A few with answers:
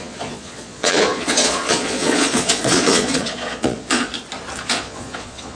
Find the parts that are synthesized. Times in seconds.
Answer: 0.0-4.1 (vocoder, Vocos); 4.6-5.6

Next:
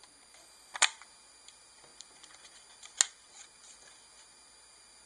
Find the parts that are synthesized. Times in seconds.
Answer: none

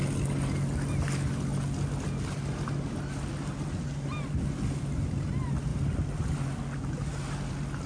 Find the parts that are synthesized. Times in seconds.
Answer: none

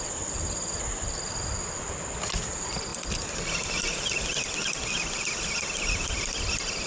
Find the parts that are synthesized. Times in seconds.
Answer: none

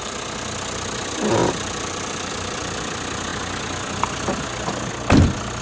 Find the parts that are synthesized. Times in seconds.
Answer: none

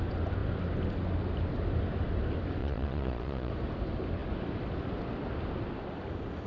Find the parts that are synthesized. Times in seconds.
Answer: 2.6-3.5 (vocoder, Vocos)

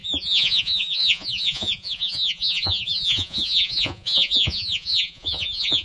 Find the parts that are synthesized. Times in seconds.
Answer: 0.0-5.8 (vocoder, Vocos)